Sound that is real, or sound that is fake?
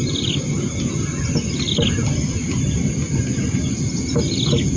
real